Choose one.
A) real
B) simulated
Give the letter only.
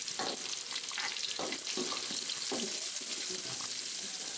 A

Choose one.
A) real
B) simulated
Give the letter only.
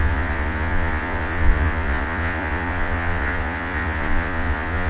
B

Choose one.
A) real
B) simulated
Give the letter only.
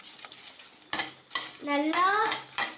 A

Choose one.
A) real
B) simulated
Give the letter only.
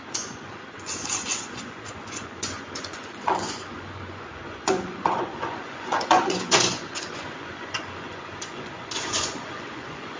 B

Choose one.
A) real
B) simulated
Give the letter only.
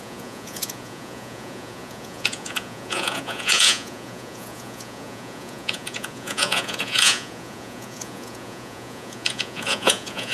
B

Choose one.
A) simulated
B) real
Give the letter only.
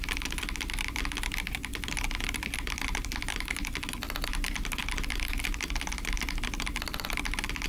B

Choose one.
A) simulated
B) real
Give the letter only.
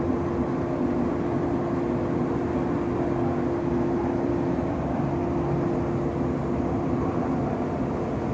B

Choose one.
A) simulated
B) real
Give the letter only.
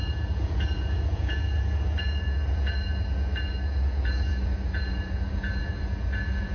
A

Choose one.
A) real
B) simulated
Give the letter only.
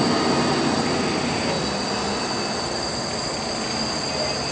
A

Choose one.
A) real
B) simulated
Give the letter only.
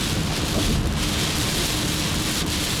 A